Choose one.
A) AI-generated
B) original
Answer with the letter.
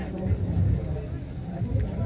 B